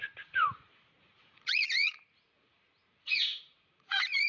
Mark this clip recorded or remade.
remade